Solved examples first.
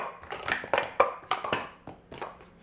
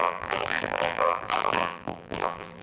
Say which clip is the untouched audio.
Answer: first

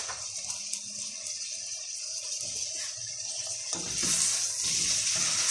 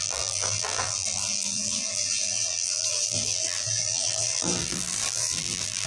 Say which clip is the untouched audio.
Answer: first